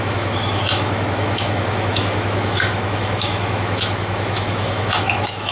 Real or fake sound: fake